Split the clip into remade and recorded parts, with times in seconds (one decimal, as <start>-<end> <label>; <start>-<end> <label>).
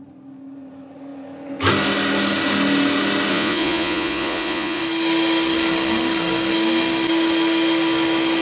0.0-3.3 recorded; 3.3-4.8 remade; 4.8-8.4 recorded